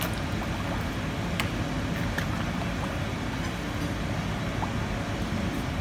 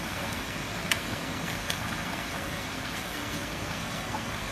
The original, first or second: first